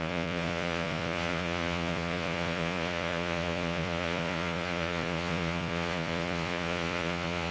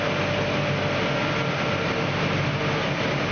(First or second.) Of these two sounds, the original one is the second